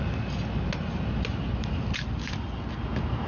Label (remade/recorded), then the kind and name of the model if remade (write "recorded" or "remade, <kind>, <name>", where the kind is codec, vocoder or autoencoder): recorded